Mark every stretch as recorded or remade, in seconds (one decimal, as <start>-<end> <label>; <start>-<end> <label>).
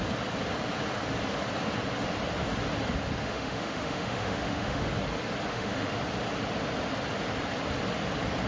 0.0-3.2 recorded; 3.2-4.9 remade; 4.9-5.5 recorded; 5.5-6.0 remade; 6.0-8.5 recorded